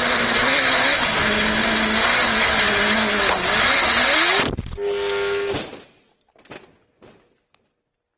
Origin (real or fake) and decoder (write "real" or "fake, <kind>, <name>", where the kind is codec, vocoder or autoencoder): real